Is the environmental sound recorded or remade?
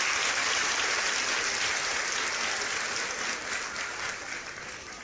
recorded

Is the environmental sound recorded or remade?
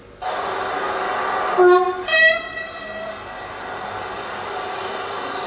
recorded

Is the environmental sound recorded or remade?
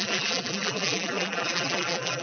remade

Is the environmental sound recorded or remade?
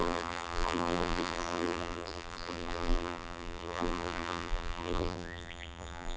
remade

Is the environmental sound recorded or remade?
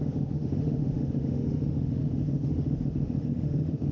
remade